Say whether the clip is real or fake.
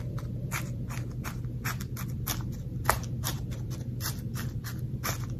real